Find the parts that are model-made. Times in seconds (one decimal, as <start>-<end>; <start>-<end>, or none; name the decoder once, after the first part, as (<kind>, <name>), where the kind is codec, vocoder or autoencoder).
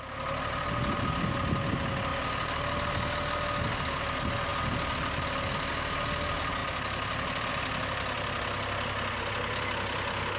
none